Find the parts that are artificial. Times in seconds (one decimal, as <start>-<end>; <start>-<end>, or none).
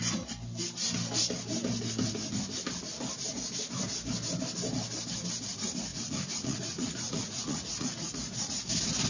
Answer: 5.9-8.6